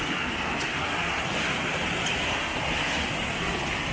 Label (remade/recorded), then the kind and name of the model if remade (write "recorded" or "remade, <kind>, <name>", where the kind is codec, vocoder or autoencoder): recorded